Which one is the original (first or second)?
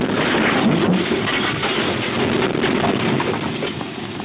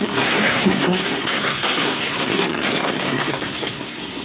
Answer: first